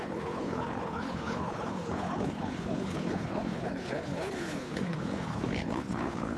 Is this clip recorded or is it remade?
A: remade